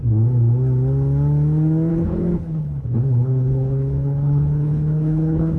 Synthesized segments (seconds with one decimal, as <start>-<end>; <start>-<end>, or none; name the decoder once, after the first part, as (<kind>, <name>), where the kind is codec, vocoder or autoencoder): 1.9-5.6 (codec, HILCodec)